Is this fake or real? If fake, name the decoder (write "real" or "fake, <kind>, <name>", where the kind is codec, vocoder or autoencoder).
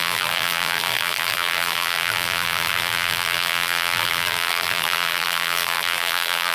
fake, vocoder, BigVGAN v2